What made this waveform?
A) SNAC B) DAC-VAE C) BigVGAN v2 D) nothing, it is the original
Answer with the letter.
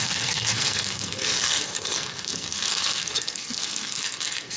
A